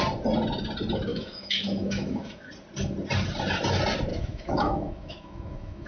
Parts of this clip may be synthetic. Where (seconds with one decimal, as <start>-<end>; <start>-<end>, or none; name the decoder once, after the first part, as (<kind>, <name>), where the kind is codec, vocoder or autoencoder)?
1.1-2.5 (autoencoder, DAC-VAE); 4.1-5.9